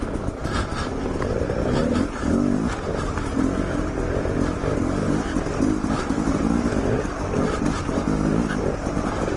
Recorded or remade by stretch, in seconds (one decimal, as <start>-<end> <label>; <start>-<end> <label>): 0.0-9.4 recorded